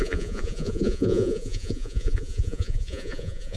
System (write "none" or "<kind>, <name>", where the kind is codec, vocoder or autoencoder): vocoder, Vocos